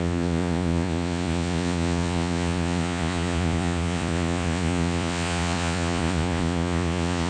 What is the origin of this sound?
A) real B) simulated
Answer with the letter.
B